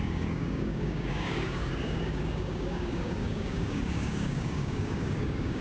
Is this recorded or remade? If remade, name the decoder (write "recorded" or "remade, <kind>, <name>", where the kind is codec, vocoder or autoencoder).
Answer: remade, codec, DAC